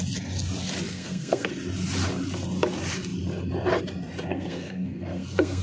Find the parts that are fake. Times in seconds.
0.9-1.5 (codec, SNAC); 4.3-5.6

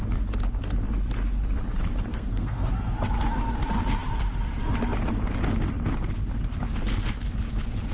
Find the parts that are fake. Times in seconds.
2.1-2.7 (codec, SNAC)

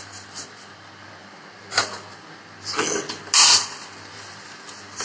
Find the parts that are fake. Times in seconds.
none